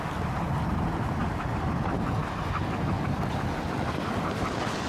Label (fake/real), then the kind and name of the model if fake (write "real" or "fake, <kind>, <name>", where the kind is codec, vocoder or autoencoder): real